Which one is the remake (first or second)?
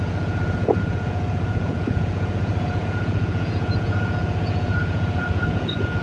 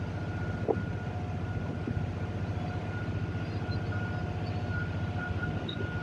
first